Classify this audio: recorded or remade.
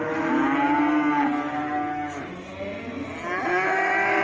recorded